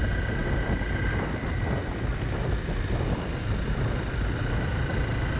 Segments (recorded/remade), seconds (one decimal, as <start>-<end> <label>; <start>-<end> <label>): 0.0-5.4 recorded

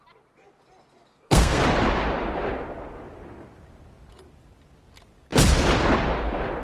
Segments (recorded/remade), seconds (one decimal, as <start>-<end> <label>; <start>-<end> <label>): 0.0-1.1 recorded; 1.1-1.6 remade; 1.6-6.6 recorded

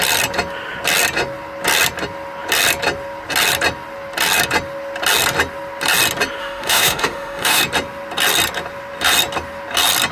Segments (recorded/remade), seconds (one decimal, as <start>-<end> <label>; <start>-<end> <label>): 0.0-6.4 recorded; 6.4-7.6 remade; 7.6-10.1 recorded